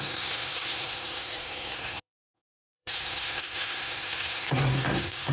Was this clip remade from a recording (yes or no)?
yes